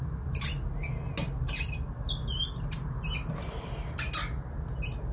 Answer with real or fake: real